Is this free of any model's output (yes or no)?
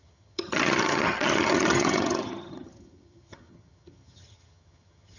no